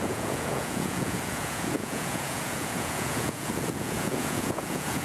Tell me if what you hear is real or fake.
fake